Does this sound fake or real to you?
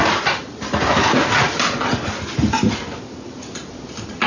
real